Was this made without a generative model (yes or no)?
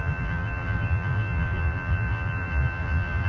no